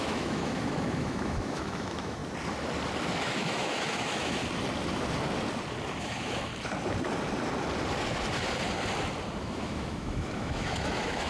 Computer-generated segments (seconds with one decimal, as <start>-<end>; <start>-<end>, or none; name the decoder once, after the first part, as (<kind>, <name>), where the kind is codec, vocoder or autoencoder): 0.0-2.2 (autoencoder, DAC-VAE); 3.2-4.4; 6.0-6.5; 9.4-11.3